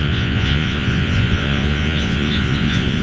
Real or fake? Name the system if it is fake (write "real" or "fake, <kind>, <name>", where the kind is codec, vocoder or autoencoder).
fake, vocoder, Vocos